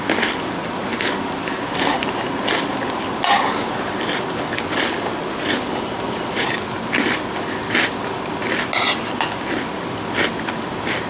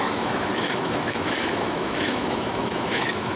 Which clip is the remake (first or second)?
second